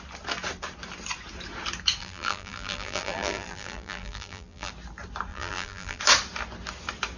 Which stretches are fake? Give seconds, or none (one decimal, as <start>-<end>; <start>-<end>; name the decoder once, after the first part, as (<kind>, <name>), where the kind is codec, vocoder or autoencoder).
2.0-4.7 (vocoder, BigVGAN v2); 5.3-6.0